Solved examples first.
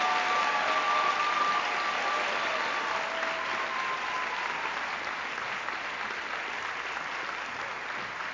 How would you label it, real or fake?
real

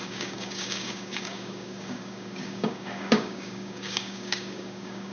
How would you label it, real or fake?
fake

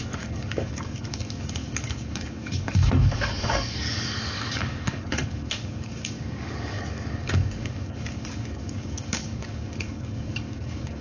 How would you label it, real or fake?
fake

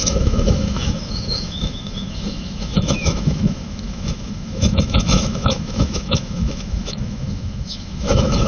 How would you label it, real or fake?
fake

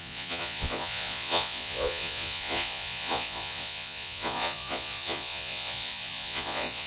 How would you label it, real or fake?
fake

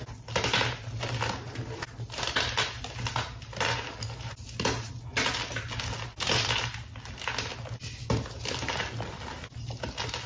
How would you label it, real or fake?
real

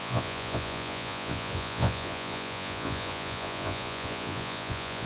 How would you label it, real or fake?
fake